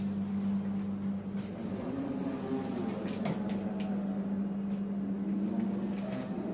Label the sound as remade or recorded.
recorded